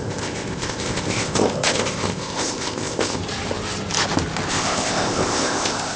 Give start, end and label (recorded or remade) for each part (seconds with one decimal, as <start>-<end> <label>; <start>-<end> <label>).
0.0-3.2 remade; 3.2-4.5 recorded; 4.5-6.0 remade